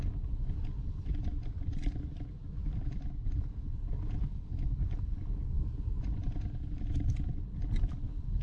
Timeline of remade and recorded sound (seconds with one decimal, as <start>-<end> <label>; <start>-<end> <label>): 0.0-3.2 recorded; 3.2-5.0 remade; 5.0-8.4 recorded